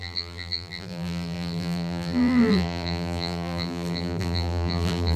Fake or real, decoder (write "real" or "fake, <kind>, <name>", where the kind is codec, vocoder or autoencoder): fake, vocoder, BigVGAN v2